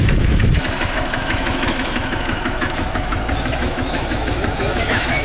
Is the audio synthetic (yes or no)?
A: yes